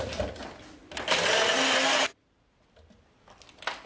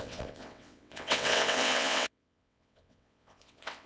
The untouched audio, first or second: first